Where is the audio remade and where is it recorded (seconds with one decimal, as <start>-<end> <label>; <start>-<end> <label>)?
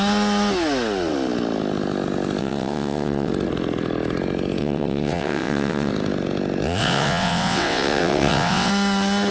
0.0-2.4 recorded; 2.4-3.3 remade; 3.3-4.6 recorded; 4.6-5.9 remade; 5.9-6.8 recorded; 6.8-8.7 remade; 8.7-9.3 recorded